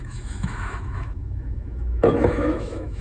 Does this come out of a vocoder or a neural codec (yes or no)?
yes